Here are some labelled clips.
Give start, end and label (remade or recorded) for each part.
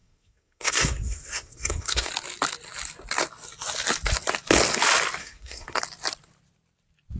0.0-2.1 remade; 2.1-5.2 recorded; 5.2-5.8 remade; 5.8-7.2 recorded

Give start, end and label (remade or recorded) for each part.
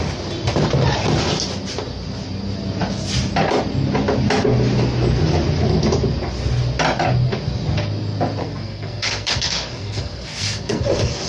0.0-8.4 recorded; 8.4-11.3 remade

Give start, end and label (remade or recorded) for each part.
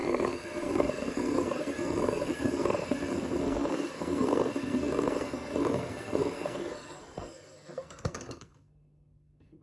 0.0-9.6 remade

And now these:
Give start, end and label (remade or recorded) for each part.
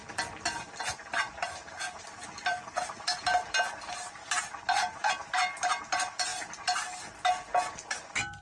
0.0-8.4 recorded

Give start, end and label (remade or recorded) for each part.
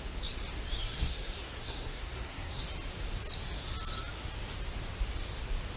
0.0-0.8 recorded; 0.8-2.6 remade; 2.6-5.8 recorded